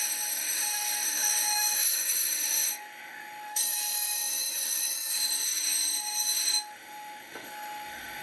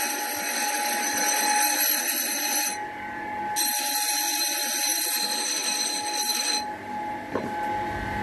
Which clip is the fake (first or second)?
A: first